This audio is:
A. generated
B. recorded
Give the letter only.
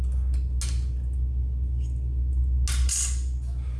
B